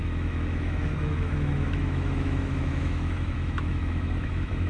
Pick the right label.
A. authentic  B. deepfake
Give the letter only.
B